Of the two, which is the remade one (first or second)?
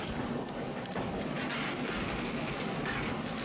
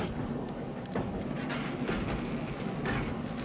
first